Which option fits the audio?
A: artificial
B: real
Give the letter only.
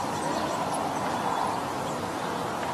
B